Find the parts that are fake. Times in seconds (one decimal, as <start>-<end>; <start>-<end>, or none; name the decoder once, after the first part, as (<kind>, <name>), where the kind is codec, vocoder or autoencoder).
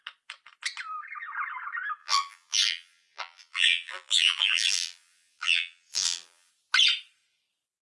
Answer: 2.0-6.5 (vocoder, BigVGAN v2)